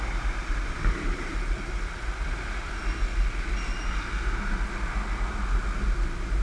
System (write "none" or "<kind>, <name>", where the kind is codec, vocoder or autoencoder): none